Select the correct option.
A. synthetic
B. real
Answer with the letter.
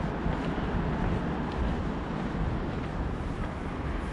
B